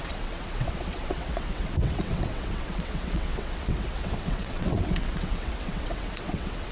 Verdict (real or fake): fake